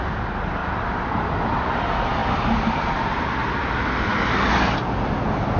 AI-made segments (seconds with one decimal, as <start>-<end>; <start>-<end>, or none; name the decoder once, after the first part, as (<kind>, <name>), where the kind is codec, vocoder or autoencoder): none